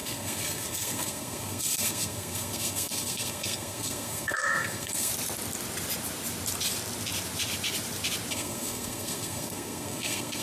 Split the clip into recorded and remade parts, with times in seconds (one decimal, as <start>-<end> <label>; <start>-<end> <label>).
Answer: 0.0-5.1 remade; 5.1-8.3 recorded; 8.3-10.4 remade